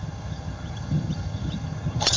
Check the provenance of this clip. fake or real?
fake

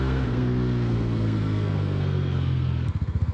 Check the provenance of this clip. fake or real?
fake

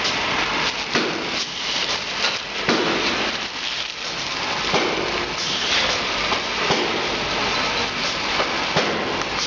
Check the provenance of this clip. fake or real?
real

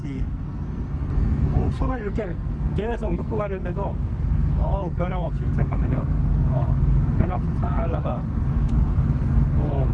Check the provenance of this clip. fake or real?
fake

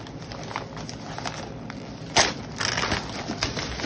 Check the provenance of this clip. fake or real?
real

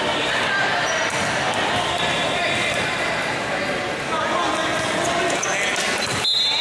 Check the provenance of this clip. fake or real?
real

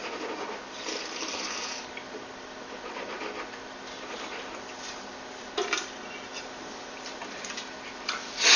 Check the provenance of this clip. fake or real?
real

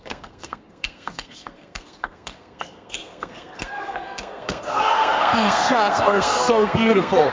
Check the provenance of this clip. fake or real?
fake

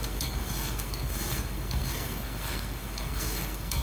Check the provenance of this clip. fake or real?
fake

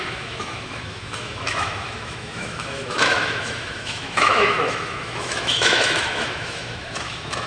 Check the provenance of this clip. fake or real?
fake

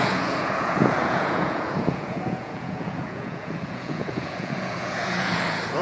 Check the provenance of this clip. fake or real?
fake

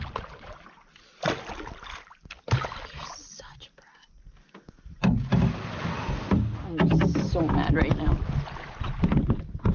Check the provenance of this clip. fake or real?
real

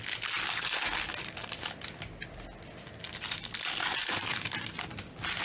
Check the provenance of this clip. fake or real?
real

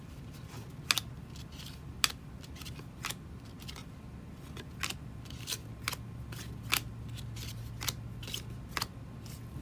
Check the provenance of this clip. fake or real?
real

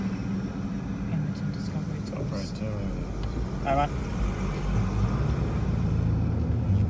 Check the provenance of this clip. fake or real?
real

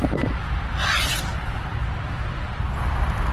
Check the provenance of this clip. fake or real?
real